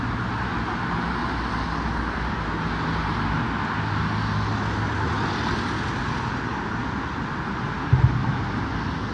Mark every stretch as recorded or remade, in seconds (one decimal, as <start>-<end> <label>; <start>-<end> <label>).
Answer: 0.0-9.1 recorded

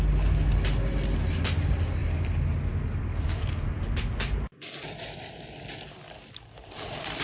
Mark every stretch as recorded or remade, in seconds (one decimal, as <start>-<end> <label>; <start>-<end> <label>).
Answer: 0.0-7.2 recorded

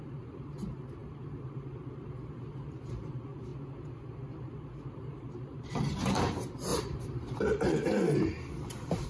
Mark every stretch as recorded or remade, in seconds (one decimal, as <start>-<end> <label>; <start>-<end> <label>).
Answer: 0.0-3.5 remade; 3.5-4.5 recorded; 4.5-9.1 remade

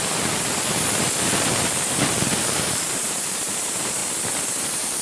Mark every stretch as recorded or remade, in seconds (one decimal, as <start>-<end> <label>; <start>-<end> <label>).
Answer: 0.0-2.7 recorded; 2.7-4.0 remade; 4.0-4.6 recorded; 4.6-5.0 remade

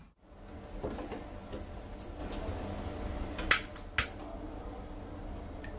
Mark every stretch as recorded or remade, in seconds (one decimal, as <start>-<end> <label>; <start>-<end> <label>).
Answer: 0.0-5.8 recorded